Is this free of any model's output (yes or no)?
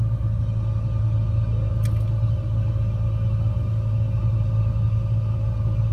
yes